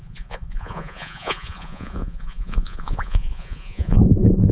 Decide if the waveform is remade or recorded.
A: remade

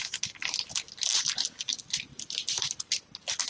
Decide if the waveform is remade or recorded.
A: recorded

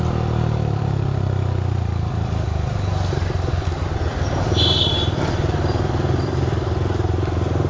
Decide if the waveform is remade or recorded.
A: remade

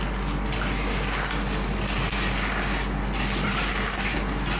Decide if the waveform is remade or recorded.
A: recorded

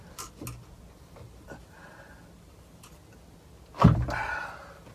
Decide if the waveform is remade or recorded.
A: recorded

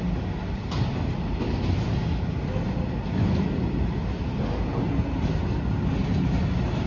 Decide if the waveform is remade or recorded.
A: recorded